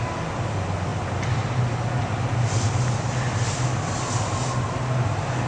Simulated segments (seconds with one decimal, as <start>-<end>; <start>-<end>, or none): none